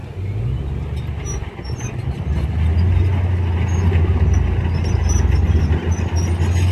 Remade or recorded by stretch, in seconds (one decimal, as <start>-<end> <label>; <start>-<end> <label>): 0.0-6.7 recorded